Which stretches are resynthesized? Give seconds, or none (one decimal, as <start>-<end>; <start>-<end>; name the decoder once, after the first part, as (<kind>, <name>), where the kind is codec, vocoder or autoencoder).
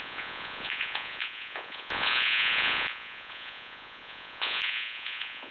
0.0-5.5 (vocoder, Vocos)